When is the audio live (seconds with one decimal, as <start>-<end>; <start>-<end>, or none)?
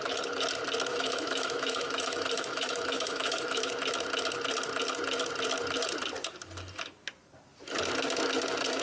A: 0.0-0.9; 3.7-8.8